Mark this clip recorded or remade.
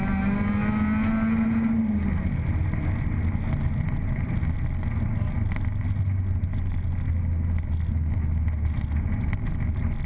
recorded